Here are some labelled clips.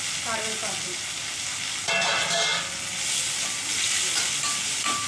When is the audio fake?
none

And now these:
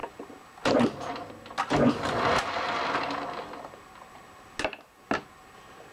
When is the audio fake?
none